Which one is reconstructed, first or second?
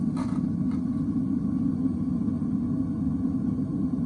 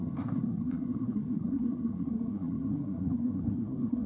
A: second